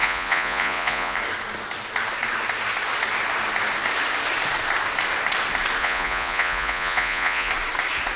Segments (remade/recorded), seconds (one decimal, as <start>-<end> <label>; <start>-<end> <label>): 0.0-1.2 remade; 1.2-5.8 recorded; 5.8-7.5 remade; 7.5-8.2 recorded